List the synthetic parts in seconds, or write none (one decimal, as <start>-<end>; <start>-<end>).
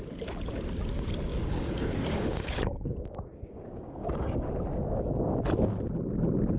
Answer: 1.3-4.5